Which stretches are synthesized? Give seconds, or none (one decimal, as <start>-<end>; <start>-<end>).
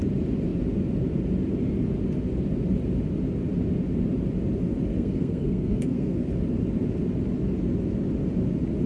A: 4.9-6.3